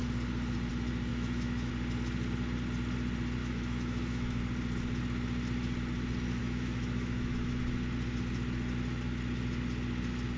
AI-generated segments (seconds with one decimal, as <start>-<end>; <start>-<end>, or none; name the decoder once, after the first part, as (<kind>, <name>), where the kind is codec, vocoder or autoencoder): 1.1-1.7 (autoencoder, DAC-VAE); 3.4-4.4; 6.4-7.6